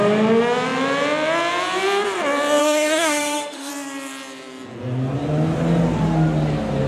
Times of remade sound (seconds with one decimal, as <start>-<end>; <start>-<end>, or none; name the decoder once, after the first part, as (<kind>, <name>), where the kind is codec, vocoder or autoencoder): 2.6-3.7 (autoencoder, DAC-VAE)